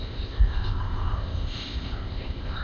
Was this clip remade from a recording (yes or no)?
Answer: yes